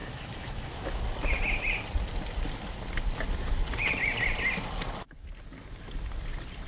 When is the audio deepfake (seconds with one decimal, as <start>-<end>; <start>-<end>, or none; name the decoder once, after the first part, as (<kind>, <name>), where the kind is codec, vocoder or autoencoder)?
0.0-1.0 (autoencoder, DAC-VAE)